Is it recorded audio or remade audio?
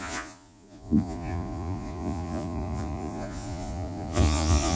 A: remade